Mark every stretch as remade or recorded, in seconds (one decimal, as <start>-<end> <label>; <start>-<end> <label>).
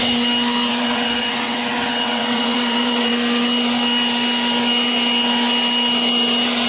0.0-0.7 recorded; 0.7-3.1 remade; 3.1-6.7 recorded